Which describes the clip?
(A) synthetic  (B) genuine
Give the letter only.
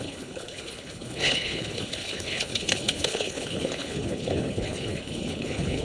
A